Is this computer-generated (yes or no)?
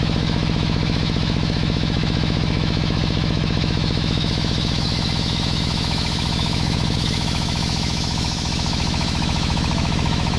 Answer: yes